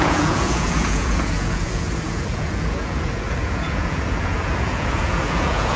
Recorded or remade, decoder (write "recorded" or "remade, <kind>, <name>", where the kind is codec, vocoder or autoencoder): remade, vocoder, Vocos